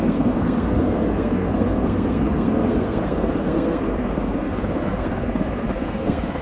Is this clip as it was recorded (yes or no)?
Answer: no